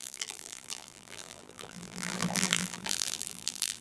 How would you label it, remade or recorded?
remade